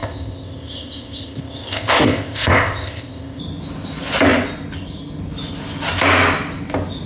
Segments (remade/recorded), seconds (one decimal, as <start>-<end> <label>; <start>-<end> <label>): 0.0-3.4 remade; 3.4-7.1 recorded